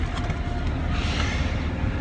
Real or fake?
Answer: real